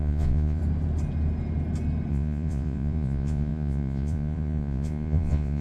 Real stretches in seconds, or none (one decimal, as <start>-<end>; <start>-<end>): 0.6-2.1